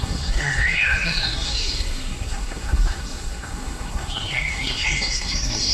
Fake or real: fake